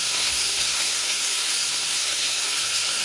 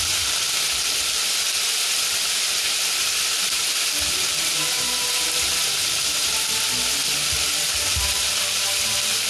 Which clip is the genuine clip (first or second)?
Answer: second